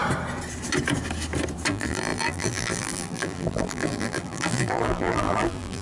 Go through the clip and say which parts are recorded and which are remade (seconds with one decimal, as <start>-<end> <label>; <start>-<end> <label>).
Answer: 0.0-1.7 recorded; 1.7-5.8 remade